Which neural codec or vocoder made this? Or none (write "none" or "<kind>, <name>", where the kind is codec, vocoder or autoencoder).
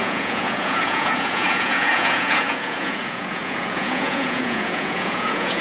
vocoder, Vocos